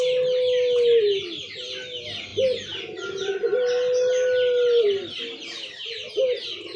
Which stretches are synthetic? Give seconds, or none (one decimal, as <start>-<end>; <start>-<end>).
none